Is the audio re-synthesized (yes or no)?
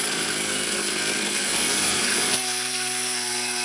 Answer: yes